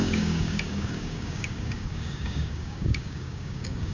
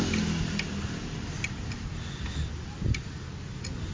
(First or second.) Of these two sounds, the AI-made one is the first